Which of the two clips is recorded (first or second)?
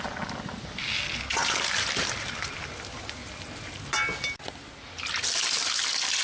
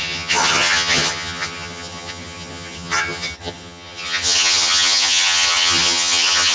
first